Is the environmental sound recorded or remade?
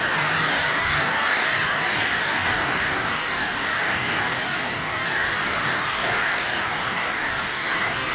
remade